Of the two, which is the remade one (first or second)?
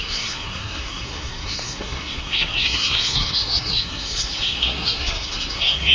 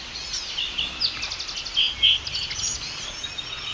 first